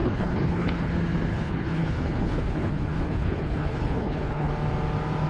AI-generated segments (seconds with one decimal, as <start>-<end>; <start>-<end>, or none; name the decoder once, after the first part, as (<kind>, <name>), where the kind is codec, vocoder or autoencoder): 0.0-0.9 (codec, HILCodec); 1.3-4.5